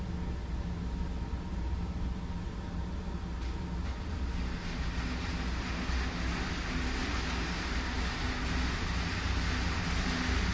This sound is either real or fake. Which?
real